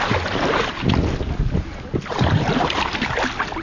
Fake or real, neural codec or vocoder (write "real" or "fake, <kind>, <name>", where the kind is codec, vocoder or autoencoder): real